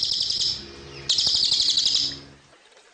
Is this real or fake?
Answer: real